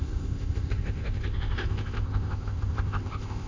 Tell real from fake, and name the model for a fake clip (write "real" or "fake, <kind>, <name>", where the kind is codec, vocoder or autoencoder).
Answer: fake, codec, ZipCodec